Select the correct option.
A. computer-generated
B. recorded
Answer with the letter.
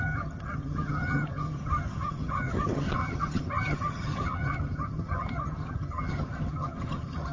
A